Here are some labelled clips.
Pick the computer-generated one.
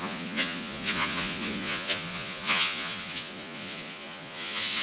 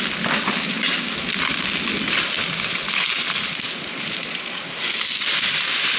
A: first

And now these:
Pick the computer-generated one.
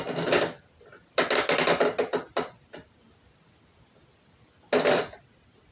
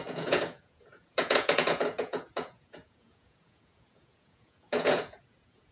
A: second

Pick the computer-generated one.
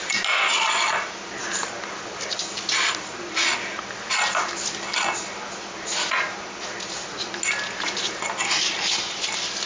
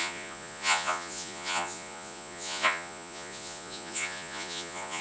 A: second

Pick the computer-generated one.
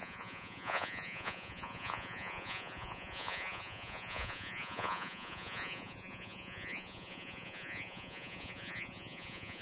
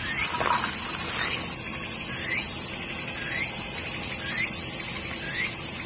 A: first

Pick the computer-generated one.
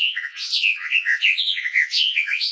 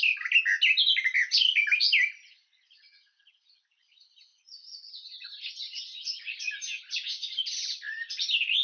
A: first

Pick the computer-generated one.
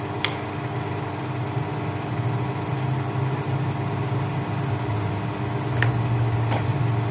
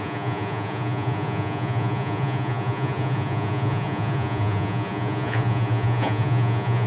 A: second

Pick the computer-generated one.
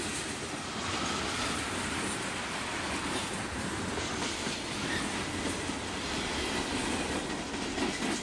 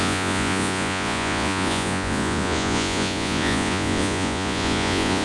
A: second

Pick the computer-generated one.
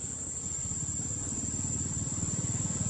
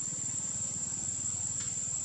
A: second